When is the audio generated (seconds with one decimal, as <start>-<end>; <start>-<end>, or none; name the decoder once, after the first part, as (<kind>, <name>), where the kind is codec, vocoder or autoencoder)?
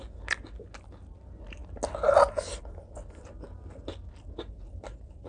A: none